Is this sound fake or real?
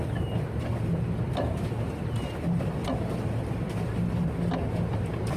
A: real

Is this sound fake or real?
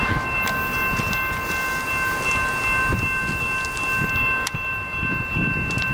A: real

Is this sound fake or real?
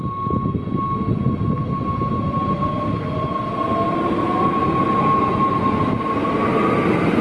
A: real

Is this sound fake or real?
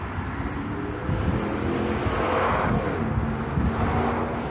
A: real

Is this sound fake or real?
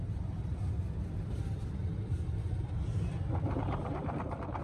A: real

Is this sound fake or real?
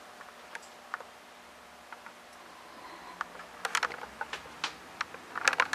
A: real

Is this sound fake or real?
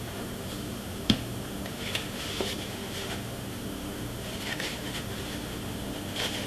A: fake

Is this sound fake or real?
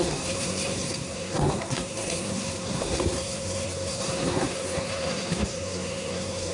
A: fake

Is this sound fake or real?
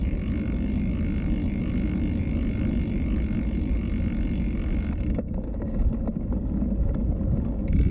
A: real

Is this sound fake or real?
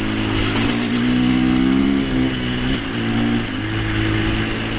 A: real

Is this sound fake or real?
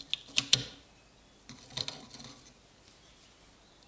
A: real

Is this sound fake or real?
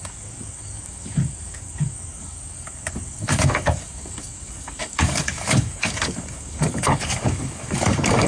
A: fake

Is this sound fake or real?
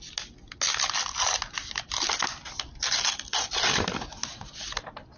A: real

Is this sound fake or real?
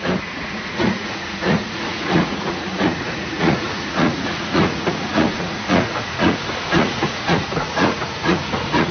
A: fake